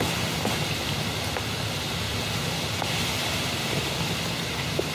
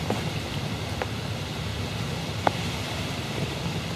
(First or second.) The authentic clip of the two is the first